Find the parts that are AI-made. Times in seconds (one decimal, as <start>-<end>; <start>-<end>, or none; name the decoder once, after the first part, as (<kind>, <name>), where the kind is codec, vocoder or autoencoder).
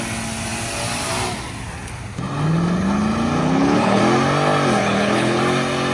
3.4-4.0 (codec, HILCodec); 4.8-5.4